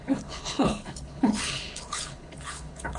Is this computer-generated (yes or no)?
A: yes